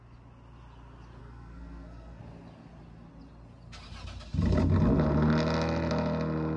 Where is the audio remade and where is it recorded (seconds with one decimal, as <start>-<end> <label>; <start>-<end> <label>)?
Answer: 0.0-1.2 recorded; 1.2-2.2 remade; 2.2-6.6 recorded